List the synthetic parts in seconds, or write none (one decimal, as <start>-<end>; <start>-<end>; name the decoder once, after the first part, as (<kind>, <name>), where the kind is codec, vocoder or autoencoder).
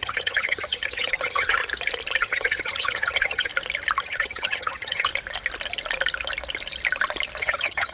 0.0-1.6 (vocoder, HiFi-GAN); 2.2-3.5; 4.0-5.1; 7.4-7.9